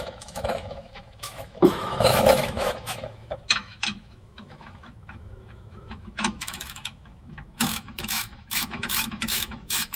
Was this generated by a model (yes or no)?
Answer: yes